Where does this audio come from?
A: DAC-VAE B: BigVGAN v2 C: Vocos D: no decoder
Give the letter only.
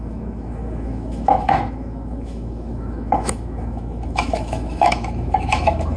A